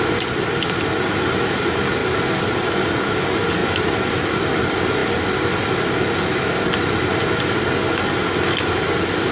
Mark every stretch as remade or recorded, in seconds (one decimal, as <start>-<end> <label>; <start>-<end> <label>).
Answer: 0.0-9.3 recorded